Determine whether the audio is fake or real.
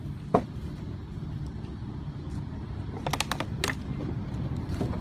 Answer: real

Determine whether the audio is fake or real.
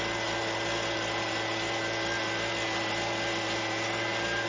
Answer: real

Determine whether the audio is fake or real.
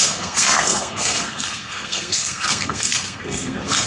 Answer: fake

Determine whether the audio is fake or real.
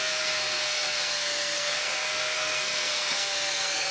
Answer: fake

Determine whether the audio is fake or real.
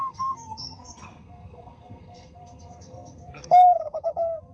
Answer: fake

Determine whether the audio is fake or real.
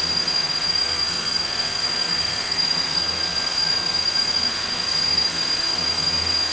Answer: fake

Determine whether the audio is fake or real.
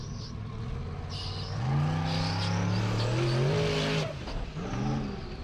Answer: real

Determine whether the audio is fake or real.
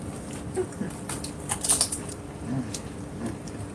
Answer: real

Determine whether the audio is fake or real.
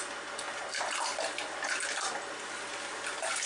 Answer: real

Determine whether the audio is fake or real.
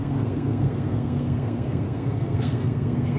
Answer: fake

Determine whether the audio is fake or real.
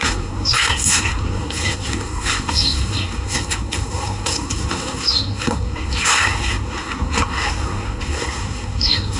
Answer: fake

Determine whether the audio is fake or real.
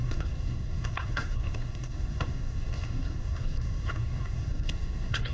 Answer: fake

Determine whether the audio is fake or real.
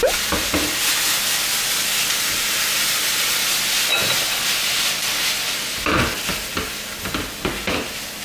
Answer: real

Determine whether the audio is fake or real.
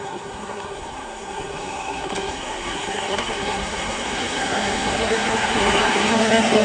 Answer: fake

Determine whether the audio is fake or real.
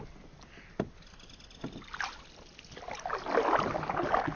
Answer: real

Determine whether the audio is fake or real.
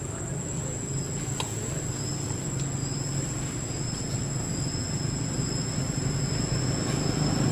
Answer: real